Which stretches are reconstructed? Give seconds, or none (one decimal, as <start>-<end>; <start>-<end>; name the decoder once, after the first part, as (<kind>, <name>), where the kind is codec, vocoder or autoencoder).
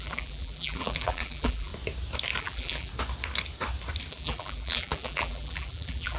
0.0-1.7 (vocoder, BigVGAN v2); 2.4-2.9; 4.1-6.2